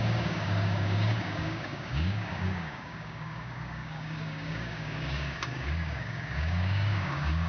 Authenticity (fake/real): fake